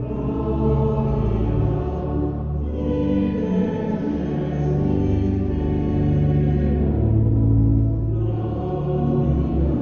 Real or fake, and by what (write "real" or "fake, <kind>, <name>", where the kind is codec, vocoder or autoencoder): real